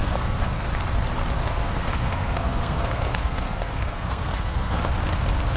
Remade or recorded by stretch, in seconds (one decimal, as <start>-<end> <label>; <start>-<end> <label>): 0.0-0.7 remade; 0.7-1.4 recorded; 1.4-4.8 remade; 4.8-5.6 recorded